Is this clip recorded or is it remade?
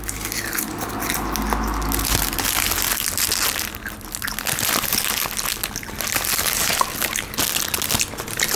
recorded